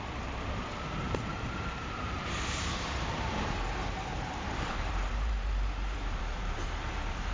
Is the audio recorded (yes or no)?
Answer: no